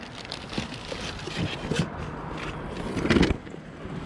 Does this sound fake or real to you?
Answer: real